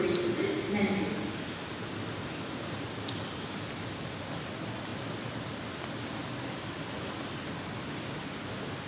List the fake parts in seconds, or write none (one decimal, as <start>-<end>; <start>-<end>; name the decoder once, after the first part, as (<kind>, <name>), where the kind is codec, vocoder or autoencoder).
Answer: none

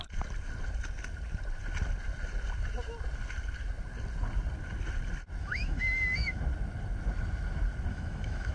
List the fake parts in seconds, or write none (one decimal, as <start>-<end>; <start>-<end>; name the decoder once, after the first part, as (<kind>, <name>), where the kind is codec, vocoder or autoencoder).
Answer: 5.4-6.4 (autoencoder, DAC-VAE); 7.9-8.5

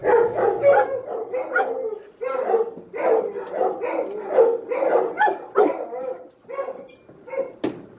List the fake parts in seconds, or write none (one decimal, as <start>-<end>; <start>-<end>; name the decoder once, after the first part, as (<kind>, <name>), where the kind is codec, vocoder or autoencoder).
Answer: none

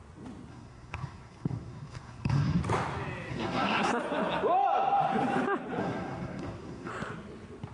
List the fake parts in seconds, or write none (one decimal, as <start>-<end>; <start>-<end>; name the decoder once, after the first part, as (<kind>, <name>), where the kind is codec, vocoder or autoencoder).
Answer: 0.5-2.6 (codec, SNAC); 3.3-3.9; 5.8-6.9

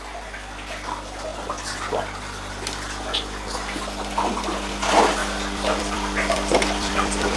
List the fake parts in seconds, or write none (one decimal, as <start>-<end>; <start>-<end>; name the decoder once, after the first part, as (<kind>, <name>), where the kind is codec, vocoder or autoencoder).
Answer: 5.2-7.4 (vocoder, BigVGAN v2)

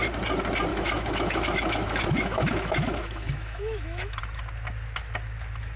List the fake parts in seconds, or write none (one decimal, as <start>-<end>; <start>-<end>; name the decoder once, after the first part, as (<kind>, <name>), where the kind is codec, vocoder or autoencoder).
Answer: 0.7-4.2 (autoencoder, DAC-VAE)

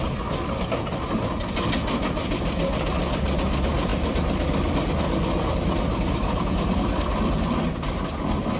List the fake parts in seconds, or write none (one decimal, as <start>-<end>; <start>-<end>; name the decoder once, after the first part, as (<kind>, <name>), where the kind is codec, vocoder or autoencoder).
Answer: none